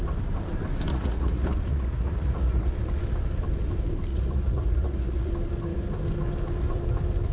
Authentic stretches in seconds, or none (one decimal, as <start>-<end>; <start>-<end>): 0.0-0.9; 2.7-4.1; 5.3-7.3